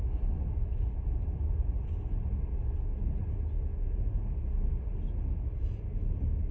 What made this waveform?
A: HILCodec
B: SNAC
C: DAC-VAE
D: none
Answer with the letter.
D